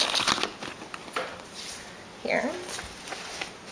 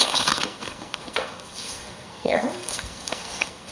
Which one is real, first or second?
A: first